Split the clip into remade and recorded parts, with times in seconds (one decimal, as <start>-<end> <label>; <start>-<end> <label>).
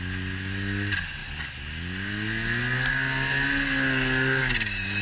0.0-5.0 recorded